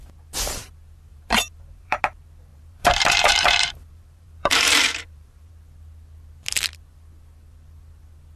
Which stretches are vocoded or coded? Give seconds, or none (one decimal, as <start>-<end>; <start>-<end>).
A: 1.1-2.0; 2.5-5.5